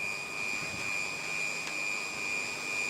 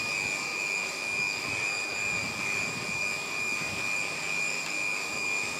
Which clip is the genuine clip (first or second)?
first